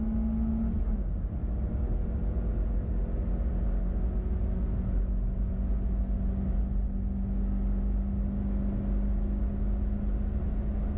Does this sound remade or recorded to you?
recorded